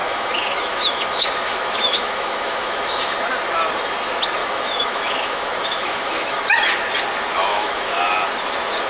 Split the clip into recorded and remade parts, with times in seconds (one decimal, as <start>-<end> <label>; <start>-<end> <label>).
0.0-3.2 remade; 3.2-4.4 recorded; 4.4-6.4 remade; 6.4-7.5 recorded; 7.5-8.1 remade; 8.1-8.9 recorded